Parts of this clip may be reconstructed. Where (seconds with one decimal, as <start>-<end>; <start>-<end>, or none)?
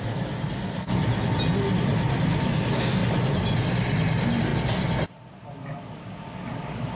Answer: none